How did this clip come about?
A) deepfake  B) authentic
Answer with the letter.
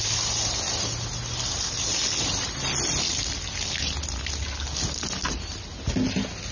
B